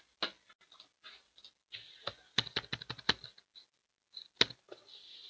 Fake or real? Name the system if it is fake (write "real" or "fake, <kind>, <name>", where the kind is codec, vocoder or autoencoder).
real